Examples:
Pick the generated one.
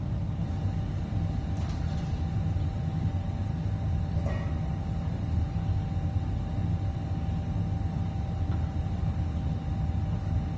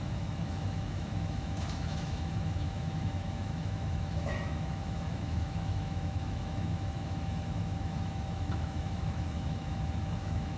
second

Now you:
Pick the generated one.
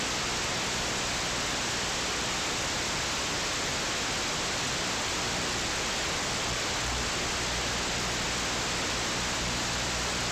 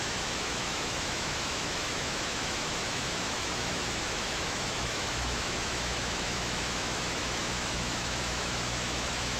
second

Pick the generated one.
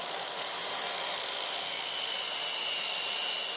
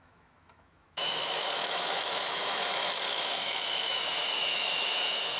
second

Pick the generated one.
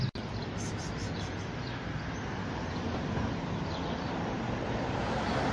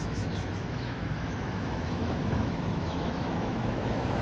second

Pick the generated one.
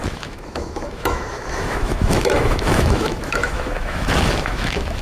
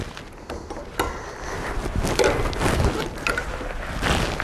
first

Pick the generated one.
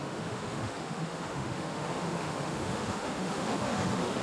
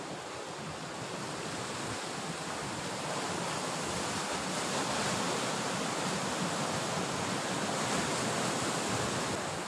first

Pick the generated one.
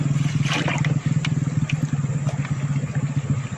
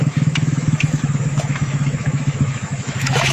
second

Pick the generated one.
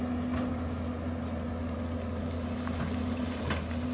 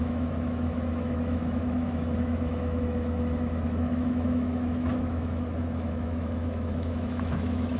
second